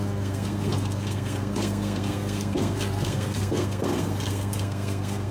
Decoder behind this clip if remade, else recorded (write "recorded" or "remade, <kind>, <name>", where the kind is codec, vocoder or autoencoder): remade, codec, SNAC